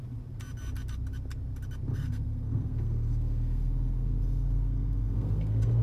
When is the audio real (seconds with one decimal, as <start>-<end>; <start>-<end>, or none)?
0.0-1.9